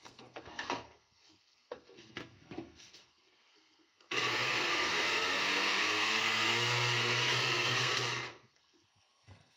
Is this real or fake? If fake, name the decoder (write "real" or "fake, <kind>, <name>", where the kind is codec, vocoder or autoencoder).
fake, codec, SNAC